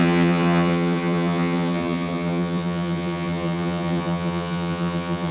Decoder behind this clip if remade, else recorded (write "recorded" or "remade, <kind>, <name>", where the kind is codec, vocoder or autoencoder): remade, vocoder, HiFi-GAN